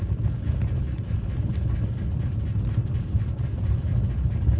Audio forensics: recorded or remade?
recorded